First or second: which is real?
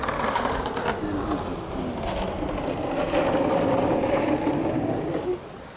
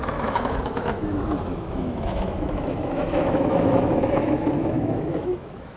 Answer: first